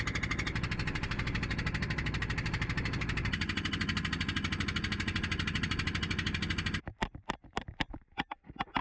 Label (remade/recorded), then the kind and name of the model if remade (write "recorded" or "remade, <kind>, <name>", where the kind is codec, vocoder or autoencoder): recorded